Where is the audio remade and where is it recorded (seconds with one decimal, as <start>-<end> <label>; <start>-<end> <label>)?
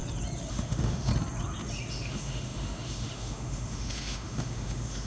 0.0-0.5 recorded; 0.5-1.1 remade; 1.1-1.9 recorded; 1.9-5.1 remade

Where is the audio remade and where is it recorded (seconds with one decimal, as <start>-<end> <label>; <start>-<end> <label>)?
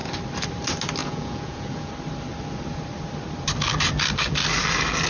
0.0-1.0 recorded; 1.0-1.9 remade; 1.9-5.1 recorded